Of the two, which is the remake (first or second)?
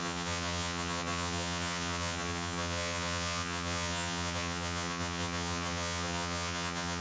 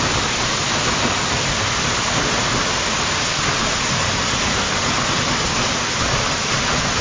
first